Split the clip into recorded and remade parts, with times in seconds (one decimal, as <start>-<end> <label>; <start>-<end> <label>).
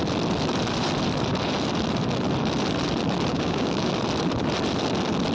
0.0-3.3 recorded; 3.3-3.9 remade; 3.9-5.3 recorded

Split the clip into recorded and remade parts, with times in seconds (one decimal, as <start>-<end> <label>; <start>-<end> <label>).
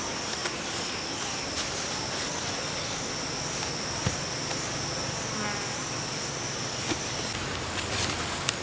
0.0-8.6 recorded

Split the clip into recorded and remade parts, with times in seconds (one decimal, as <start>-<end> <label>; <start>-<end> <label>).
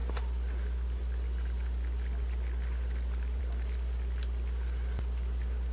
0.0-5.7 recorded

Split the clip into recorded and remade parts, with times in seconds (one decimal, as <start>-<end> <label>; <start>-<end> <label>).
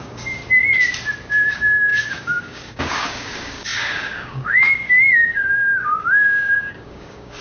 0.0-0.4 remade; 0.4-1.3 recorded; 1.3-7.4 remade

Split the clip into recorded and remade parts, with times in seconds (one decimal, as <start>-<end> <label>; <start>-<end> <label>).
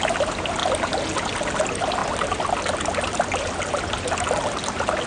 0.0-5.1 recorded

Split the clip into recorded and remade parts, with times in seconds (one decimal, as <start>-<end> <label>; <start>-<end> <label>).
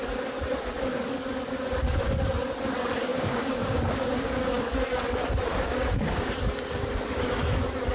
0.0-3.1 recorded; 3.1-4.6 remade; 4.6-5.5 recorded; 5.5-6.3 remade; 6.3-7.9 recorded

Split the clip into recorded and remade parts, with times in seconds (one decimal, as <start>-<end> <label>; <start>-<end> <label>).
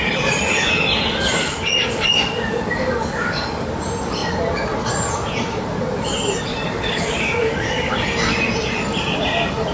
0.0-1.3 recorded; 1.3-3.7 remade; 3.7-6.5 recorded; 6.5-7.9 remade; 7.9-9.7 recorded